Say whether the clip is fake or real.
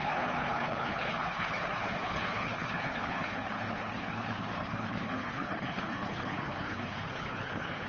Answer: fake